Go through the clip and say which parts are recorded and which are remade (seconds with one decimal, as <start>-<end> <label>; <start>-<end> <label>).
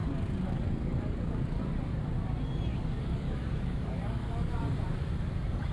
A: 0.0-1.6 remade; 1.6-2.7 recorded; 2.7-4.5 remade; 4.5-5.7 recorded